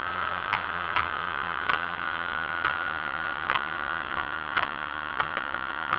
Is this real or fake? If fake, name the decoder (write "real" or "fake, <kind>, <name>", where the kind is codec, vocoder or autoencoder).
fake, vocoder, WaveNeXt